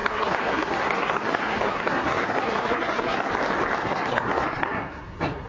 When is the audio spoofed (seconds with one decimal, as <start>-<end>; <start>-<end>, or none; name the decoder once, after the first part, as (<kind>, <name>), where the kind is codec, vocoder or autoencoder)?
0.0-3.3 (codec, SNAC); 3.8-5.5